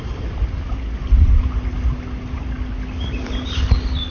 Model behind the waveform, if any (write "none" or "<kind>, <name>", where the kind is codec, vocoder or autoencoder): none